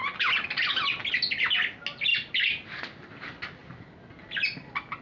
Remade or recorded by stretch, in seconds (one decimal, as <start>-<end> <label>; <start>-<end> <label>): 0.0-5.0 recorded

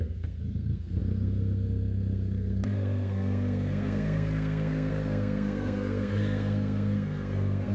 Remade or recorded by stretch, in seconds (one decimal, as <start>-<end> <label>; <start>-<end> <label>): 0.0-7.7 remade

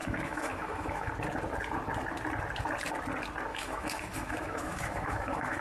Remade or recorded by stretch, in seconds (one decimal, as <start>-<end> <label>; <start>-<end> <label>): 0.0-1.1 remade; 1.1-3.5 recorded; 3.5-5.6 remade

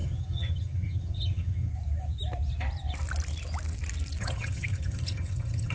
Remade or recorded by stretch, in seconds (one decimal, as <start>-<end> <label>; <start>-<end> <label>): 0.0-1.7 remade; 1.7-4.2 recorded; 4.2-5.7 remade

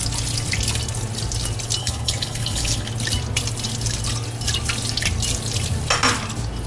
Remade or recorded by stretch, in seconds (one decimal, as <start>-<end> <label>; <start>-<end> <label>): 0.0-1.8 recorded; 1.8-2.9 remade; 2.9-6.7 recorded